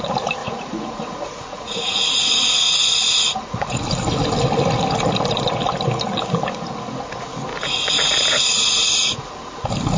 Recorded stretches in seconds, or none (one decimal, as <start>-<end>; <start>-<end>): 0.0-0.4; 3.8-7.5; 9.3-10.0